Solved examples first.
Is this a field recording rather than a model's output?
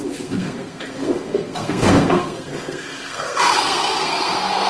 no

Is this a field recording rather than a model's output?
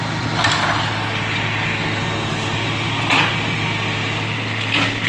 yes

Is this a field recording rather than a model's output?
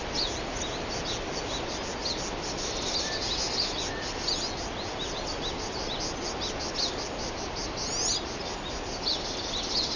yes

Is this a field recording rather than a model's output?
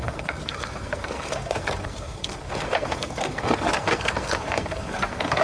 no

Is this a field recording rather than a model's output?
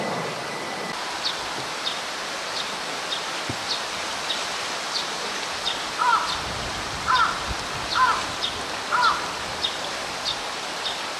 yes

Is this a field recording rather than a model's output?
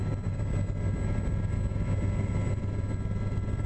yes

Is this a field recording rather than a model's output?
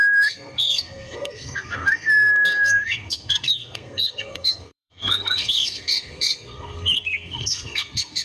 no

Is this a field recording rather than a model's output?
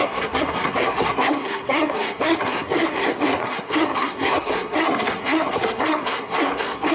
no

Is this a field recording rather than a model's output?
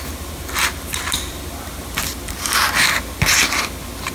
yes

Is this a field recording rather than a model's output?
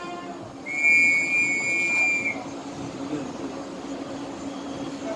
yes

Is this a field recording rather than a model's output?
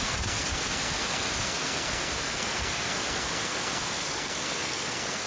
no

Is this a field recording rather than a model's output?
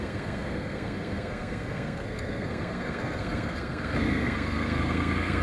no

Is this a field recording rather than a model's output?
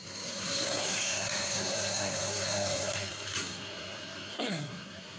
no